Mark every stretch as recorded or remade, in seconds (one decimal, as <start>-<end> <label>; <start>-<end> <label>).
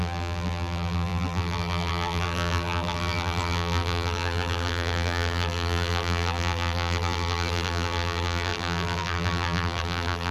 0.0-10.3 remade